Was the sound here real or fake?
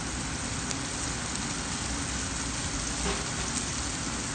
real